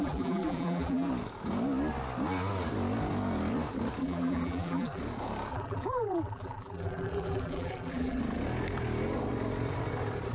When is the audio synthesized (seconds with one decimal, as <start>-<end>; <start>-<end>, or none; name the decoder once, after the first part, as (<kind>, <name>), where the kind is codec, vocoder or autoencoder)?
0.0-1.1 (vocoder, BigVGAN v2); 4.0-5.0; 5.5-8.2

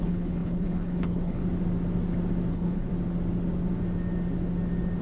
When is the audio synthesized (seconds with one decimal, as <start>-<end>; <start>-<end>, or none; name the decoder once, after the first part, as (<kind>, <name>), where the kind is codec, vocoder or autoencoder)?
0.0-1.4 (codec, HILCodec); 2.5-2.9

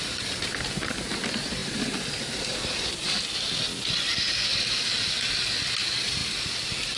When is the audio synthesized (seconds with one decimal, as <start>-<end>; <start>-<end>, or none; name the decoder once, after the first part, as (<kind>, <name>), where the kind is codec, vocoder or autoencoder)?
6.2-7.0 (vocoder, BigVGAN v2)

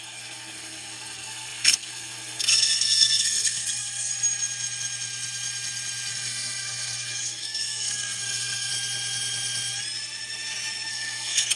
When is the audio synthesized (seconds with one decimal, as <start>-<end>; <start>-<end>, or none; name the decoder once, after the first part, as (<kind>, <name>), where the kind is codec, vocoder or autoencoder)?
0.0-4.1 (codec, SNAC); 6.1-8.7; 10.9-11.6

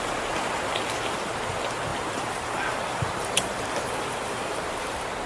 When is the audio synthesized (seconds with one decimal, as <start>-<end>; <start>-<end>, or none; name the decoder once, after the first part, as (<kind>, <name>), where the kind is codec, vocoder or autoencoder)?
0.7-1.3 (vocoder, BigVGAN v2); 1.9-5.3